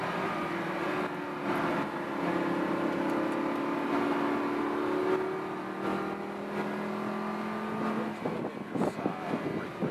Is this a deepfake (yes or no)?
no